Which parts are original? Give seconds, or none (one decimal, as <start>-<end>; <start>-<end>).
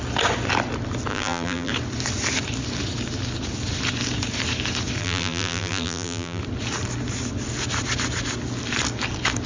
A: 0.0-1.1; 1.7-5.0; 6.4-9.5